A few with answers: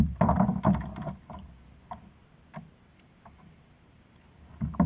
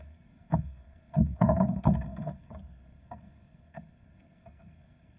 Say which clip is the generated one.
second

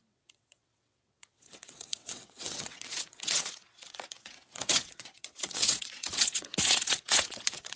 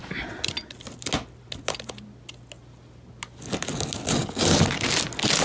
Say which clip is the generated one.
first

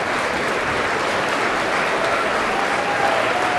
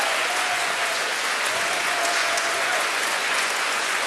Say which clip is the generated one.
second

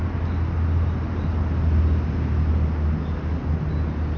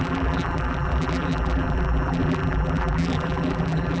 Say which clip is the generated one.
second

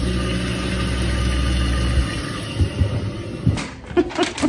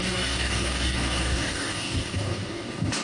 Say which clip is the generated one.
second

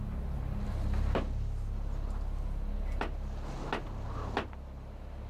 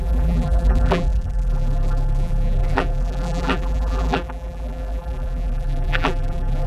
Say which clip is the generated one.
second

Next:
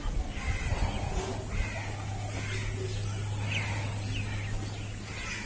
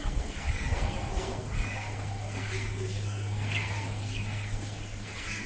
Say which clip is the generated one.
second